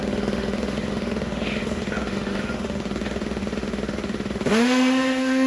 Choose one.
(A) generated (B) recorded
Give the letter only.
A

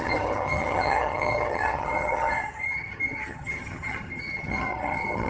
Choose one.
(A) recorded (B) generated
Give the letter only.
B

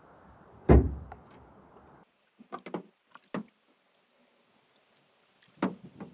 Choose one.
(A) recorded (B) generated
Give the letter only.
A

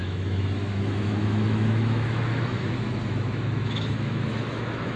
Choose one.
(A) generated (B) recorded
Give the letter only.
A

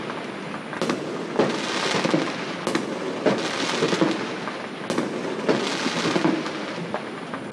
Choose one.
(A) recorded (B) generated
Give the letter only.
A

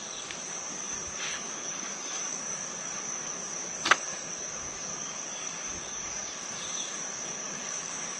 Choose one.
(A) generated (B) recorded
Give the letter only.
A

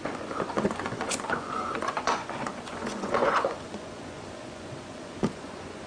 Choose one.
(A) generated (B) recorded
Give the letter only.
A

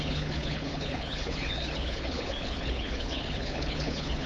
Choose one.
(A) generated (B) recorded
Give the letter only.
A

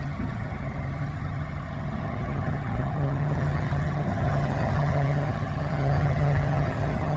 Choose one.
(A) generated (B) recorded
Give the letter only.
A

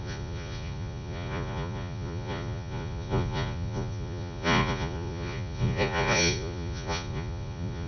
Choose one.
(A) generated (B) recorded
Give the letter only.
A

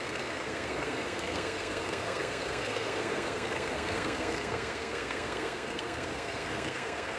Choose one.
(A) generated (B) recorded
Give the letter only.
A